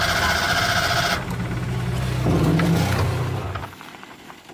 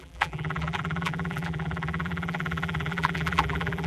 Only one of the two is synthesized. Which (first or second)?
second